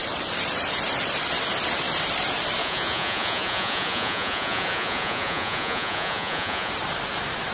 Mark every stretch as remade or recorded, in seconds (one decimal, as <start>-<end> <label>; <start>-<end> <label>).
0.0-2.6 recorded; 2.6-6.7 remade; 6.7-7.5 recorded